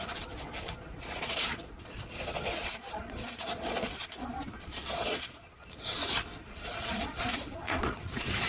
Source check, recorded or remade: remade